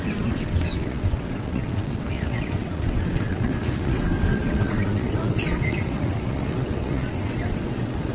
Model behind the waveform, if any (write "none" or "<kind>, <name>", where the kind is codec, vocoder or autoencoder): vocoder, WaveNeXt